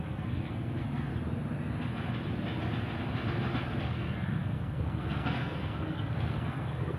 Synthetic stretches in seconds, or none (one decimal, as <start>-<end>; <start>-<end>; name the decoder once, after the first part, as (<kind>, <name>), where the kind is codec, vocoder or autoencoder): 0.0-1.1 (codec, SNAC); 3.8-7.0